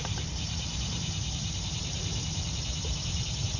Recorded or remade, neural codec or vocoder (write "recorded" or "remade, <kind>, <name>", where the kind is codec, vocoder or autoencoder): remade, vocoder, BigVGAN v2